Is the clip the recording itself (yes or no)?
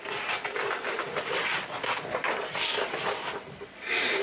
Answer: yes